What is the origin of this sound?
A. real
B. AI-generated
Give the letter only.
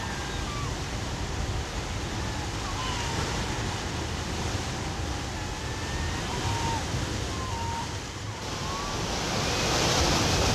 A